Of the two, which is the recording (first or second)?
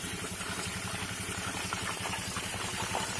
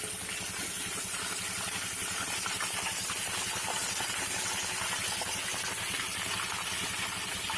second